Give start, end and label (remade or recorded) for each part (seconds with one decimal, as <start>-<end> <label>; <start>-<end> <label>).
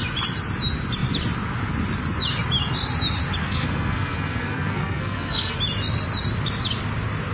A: 0.0-3.4 recorded; 3.4-5.6 remade; 5.6-7.3 recorded